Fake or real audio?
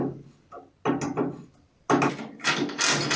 real